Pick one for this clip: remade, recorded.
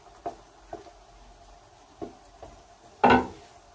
recorded